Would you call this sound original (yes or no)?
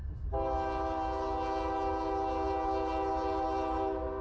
yes